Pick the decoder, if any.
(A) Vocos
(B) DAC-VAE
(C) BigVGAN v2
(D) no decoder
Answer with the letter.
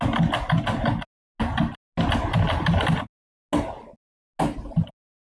D